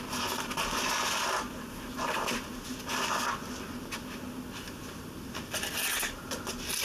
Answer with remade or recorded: recorded